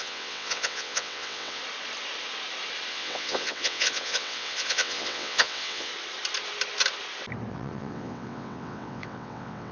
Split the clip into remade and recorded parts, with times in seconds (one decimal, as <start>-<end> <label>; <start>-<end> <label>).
0.0-1.6 remade; 1.6-2.9 recorded; 2.9-5.9 remade; 5.9-7.5 recorded; 7.5-9.7 remade